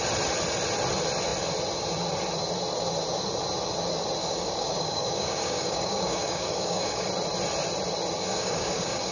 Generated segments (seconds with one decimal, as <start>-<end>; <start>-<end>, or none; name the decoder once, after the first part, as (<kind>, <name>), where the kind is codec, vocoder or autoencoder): 4.2-7.1 (codec, DAC); 8.2-9.1